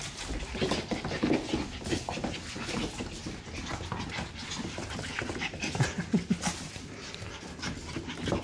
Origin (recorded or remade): recorded